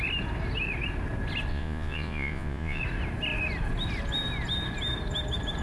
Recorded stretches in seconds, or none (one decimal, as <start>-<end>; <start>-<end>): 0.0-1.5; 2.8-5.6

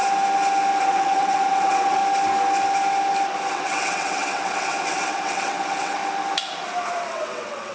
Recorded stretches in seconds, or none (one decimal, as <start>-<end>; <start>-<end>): 0.0-0.8; 2.0-3.5; 6.0-7.1

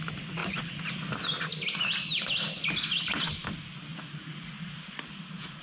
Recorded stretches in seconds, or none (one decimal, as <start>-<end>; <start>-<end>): 0.0-0.4; 0.9-3.9; 4.4-5.6

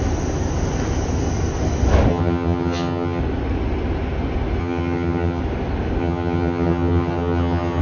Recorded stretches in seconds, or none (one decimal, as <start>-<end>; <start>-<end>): 0.0-2.1; 3.2-4.6; 5.4-6.0

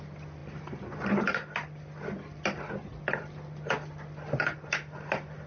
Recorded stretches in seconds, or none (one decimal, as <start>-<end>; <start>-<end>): 0.0-5.5

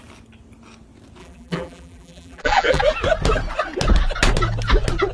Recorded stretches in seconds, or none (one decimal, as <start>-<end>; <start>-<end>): 0.0-1.2; 2.8-5.1

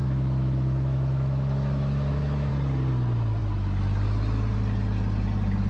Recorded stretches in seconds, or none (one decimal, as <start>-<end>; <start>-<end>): 2.5-5.7

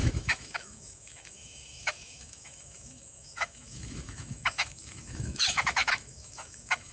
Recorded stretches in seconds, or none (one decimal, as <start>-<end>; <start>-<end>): none